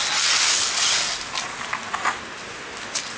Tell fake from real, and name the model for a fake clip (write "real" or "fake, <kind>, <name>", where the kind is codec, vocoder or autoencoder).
real